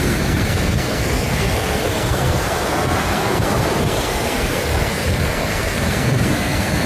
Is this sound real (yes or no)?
no